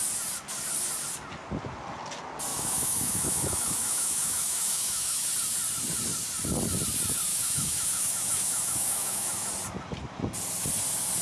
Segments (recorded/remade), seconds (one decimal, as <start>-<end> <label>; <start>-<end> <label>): 0.0-2.5 recorded; 2.5-5.3 remade; 5.3-7.3 recorded; 7.3-9.5 remade; 9.5-11.2 recorded